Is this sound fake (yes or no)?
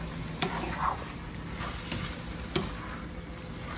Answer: no